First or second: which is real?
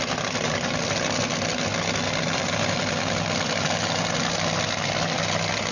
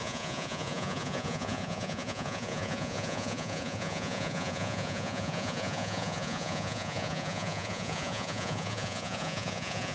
first